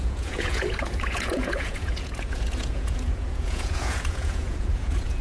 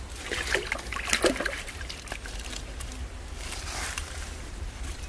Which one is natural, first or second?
second